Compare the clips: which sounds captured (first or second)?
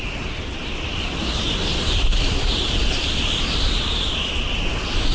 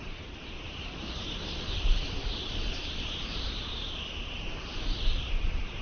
first